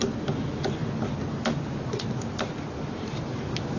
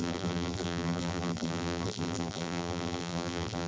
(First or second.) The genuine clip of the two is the first